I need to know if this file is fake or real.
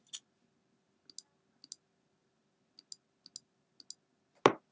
real